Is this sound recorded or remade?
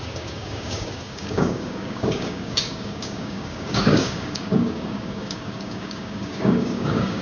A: remade